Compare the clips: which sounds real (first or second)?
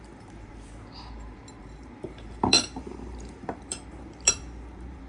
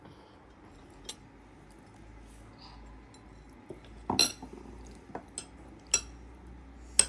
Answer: second